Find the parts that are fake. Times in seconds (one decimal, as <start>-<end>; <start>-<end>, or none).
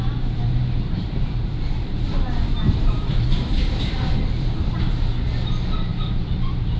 0.4-4.5; 5.9-6.8